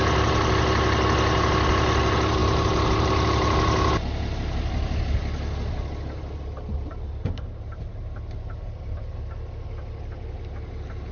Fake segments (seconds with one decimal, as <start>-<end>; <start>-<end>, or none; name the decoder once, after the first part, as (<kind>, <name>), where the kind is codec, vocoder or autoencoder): none